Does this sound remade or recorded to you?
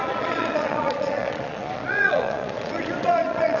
remade